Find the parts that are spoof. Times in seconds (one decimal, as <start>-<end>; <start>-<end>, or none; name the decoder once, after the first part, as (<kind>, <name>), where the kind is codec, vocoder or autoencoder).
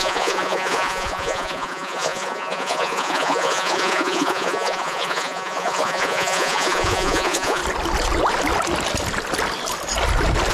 0.0-7.6 (vocoder, Vocos)